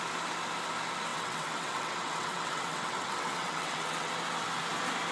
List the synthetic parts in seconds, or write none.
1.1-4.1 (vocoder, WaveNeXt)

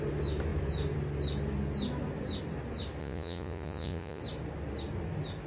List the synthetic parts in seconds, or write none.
3.0-4.2 (vocoder, Vocos)

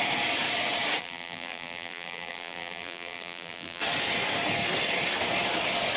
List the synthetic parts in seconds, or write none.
1.0-3.8 (vocoder, BigVGAN v2)

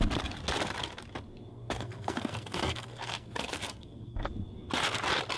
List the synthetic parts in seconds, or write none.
1.5-4.3 (codec, SNAC)